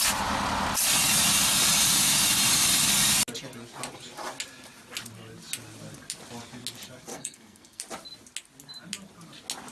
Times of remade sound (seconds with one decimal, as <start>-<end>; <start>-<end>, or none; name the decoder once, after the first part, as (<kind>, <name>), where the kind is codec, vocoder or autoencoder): 7.1-7.8 (codec, SNAC)